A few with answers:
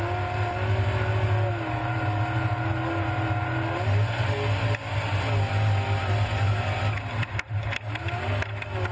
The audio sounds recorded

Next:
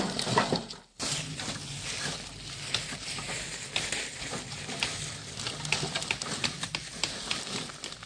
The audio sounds recorded